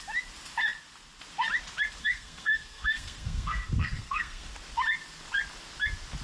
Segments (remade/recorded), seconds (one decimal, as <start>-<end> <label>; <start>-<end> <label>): 0.0-2.0 recorded; 2.0-4.5 remade; 4.5-6.2 recorded